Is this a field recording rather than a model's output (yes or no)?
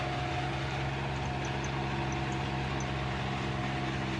yes